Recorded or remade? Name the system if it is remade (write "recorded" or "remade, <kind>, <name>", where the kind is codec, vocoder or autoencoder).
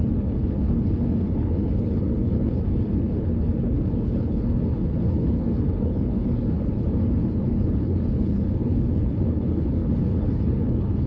remade, codec, HILCodec